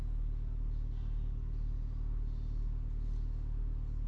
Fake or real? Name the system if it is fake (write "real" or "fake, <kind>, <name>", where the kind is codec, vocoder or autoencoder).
real